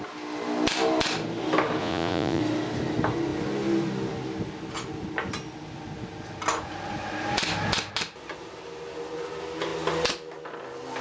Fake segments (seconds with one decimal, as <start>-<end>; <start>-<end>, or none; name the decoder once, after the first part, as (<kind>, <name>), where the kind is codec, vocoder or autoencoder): 1.8-2.4 (vocoder, Vocos)